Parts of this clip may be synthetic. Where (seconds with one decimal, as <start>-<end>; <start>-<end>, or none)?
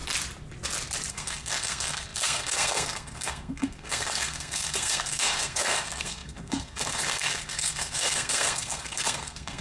1.1-9.6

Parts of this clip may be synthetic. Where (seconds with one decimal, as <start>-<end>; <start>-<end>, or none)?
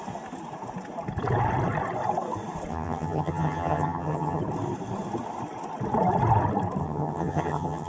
2.7-4.4; 6.8-7.9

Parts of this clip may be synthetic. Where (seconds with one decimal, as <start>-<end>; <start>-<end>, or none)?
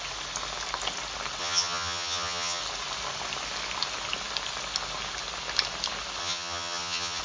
1.4-2.6; 6.2-7.2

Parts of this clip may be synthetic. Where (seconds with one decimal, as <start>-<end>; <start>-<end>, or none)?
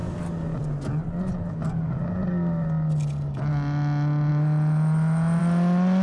none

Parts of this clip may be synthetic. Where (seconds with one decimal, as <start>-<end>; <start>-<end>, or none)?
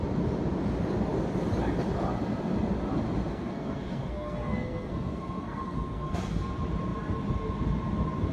3.3-6.5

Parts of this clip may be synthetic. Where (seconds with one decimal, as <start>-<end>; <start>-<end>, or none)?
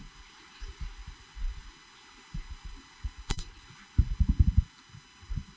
none